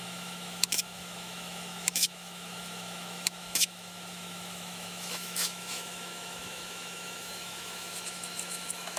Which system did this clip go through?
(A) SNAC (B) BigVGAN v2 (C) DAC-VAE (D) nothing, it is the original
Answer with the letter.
C